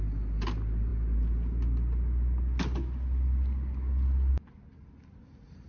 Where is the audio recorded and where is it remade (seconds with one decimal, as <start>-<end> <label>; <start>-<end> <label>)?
0.0-5.7 recorded